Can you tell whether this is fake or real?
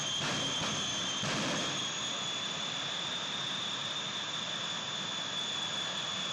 real